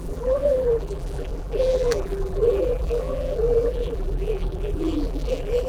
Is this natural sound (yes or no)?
no